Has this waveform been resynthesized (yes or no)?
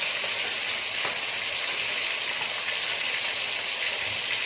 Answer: no